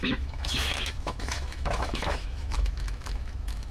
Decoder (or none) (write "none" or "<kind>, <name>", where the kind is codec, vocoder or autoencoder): autoencoder, DAC-VAE